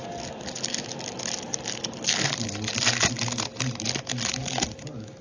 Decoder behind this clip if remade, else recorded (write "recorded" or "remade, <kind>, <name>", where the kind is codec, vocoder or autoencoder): recorded